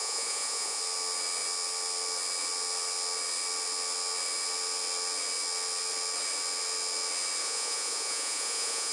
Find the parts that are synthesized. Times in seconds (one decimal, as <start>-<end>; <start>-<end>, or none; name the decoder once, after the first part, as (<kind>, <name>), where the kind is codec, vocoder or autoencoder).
0.0-0.8 (vocoder, Vocos); 7.4-8.9

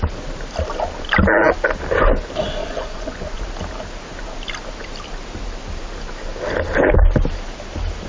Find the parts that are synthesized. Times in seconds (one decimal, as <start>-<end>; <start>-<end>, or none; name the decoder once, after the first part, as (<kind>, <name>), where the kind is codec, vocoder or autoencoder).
2.6-3.4 (vocoder, Vocos)

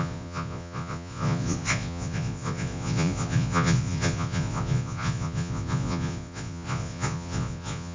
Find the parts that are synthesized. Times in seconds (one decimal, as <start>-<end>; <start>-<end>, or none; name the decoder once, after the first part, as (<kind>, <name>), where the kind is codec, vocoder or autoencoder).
0.0-7.9 (vocoder, Vocos)

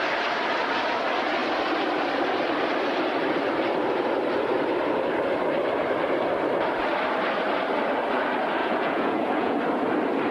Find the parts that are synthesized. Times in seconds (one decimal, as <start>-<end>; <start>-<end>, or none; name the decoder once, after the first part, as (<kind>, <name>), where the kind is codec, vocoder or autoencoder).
8.6-9.6 (vocoder, Vocos)

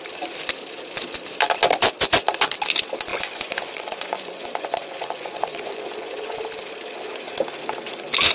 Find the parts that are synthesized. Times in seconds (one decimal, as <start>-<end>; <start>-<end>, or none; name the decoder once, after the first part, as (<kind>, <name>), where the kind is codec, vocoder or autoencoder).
3.1-6.4 (vocoder, Vocos)

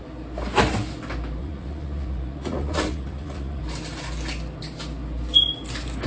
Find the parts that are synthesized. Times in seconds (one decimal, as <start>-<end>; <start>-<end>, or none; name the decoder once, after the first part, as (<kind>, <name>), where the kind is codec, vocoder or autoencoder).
1.4-3.6 (vocoder, Vocos)

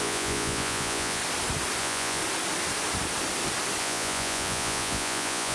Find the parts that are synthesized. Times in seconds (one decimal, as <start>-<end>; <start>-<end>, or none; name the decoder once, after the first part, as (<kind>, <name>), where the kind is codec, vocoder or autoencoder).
0.0-1.2 (vocoder, Vocos); 1.8-2.2; 3.8-5.5